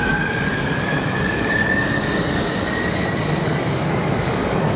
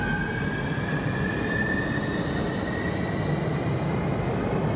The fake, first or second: first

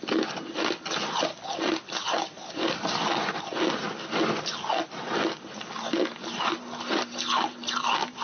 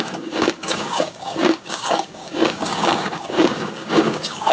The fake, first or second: second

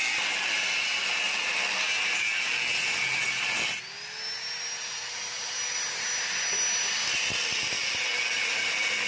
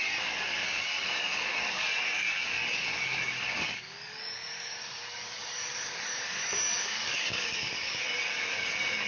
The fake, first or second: second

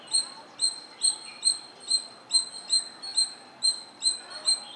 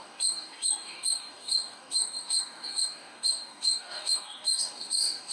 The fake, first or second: second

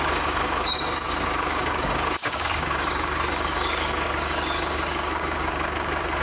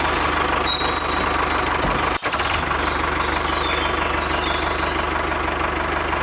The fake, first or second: first